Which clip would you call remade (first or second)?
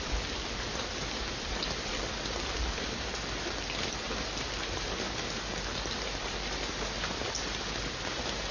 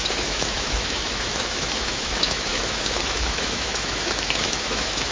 second